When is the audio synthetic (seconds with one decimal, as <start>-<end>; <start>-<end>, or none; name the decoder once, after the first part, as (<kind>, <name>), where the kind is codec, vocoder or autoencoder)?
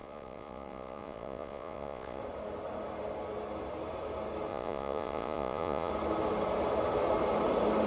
0.0-2.2 (vocoder, Vocos); 4.5-5.9